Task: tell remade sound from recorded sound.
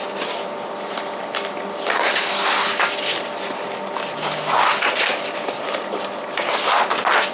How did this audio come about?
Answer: recorded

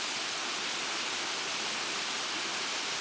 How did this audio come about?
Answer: recorded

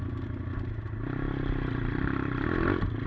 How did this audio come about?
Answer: recorded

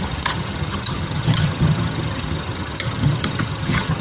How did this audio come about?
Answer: remade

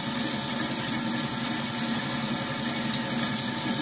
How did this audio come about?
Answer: recorded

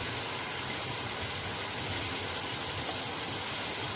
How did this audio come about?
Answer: recorded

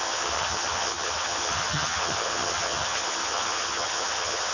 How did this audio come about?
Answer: remade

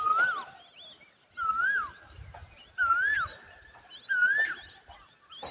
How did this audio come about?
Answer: recorded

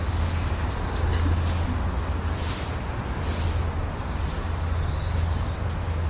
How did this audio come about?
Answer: recorded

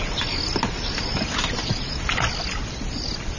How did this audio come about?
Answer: recorded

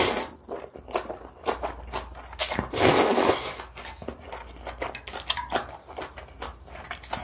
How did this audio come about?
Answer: recorded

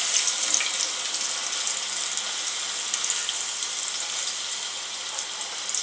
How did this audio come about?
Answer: recorded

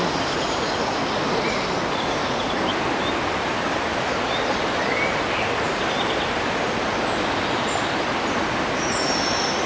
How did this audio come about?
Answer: recorded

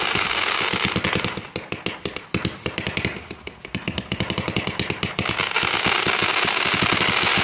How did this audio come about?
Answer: recorded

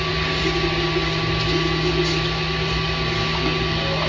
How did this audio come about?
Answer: recorded